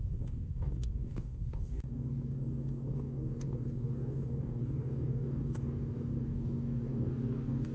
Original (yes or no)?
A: no